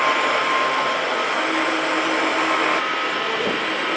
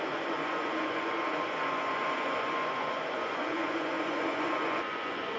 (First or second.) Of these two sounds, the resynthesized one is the second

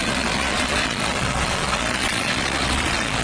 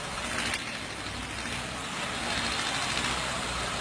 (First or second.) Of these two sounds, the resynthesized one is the first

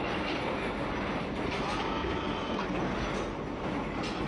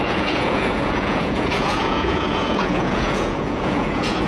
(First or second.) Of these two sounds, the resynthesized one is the second